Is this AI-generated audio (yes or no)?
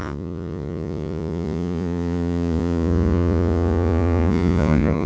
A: yes